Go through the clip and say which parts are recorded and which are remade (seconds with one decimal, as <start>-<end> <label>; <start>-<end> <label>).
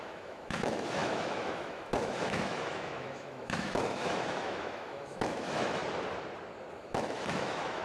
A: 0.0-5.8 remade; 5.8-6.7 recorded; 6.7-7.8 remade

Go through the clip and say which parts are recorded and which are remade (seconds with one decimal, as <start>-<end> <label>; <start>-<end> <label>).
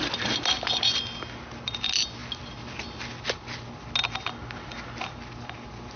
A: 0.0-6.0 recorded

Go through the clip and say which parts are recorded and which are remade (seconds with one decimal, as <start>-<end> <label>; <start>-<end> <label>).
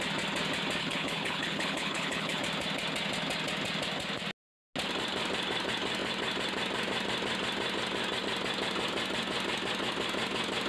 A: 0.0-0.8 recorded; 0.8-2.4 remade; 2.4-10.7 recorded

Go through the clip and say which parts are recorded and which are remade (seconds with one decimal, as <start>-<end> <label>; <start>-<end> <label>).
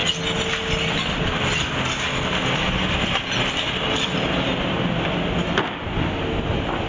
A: 0.0-6.9 recorded